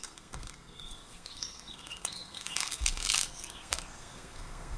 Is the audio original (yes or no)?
no